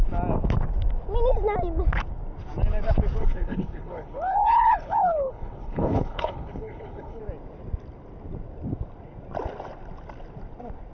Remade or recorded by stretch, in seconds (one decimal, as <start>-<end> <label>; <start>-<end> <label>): 0.0-3.2 recorded; 3.2-7.2 remade; 7.2-10.9 recorded